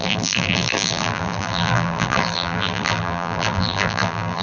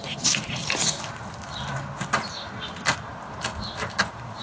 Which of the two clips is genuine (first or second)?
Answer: second